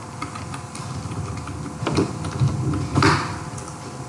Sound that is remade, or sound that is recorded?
recorded